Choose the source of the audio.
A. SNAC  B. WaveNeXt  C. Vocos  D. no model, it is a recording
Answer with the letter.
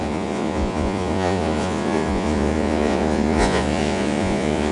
C